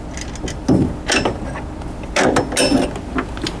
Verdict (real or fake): real